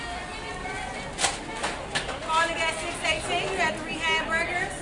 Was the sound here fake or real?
real